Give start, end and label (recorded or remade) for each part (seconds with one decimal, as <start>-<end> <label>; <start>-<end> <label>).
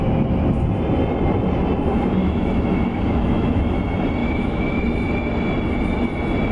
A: 0.0-2.2 recorded; 2.2-3.6 remade; 3.6-4.2 recorded; 4.2-4.8 remade; 4.8-6.5 recorded